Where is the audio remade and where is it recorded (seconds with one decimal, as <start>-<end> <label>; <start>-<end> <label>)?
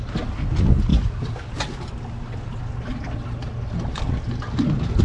0.0-5.0 recorded